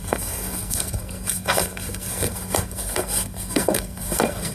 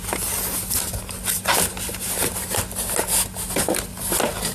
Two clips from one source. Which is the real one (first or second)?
second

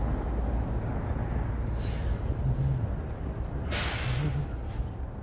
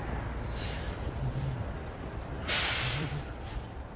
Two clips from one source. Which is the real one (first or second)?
first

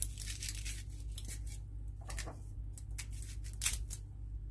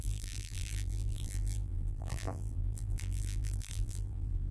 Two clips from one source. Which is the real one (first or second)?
first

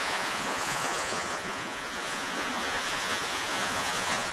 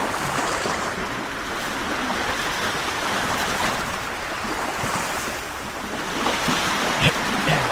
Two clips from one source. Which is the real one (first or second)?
second